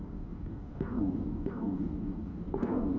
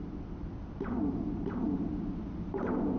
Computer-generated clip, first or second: first